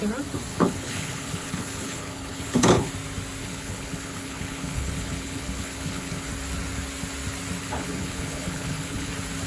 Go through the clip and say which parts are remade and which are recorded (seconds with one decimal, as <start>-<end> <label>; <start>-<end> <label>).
0.0-0.5 recorded; 0.5-2.9 remade; 2.9-3.4 recorded; 3.4-6.3 remade; 6.3-7.6 recorded; 7.6-9.1 remade; 9.1-9.5 recorded